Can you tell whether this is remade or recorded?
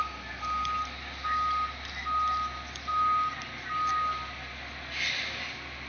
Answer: recorded